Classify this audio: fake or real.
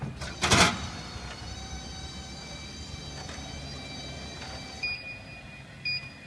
real